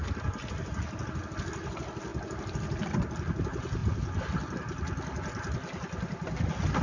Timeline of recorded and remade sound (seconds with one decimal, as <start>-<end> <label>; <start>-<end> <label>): 0.0-6.8 recorded